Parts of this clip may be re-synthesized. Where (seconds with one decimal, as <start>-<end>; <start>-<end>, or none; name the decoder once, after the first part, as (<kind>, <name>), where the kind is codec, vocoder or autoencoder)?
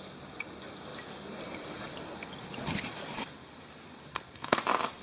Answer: 4.1-4.6 (codec, SNAC)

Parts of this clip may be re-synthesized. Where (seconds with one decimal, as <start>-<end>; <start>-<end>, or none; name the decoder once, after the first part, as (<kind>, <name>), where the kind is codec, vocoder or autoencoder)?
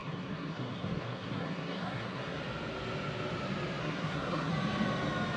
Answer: 0.0-2.4 (codec, SNAC); 3.8-4.5